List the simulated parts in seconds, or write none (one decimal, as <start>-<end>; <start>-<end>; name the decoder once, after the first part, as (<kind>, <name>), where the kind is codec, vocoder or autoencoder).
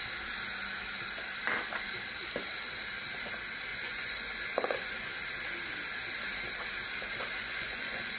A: 3.7-5.0 (vocoder, Vocos); 7.4-8.2